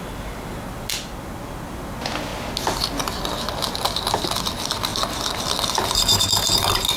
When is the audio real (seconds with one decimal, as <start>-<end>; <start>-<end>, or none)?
0.0-7.0